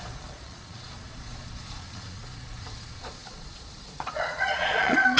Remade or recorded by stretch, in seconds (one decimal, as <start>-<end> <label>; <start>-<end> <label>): 0.0-5.2 remade

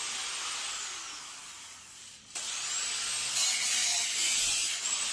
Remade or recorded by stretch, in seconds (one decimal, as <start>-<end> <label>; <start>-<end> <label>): 0.0-3.8 recorded; 3.8-5.1 remade

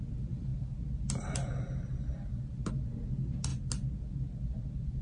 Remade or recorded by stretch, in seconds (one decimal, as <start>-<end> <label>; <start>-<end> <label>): 0.0-5.0 recorded